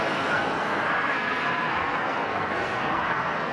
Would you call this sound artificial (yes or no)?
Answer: yes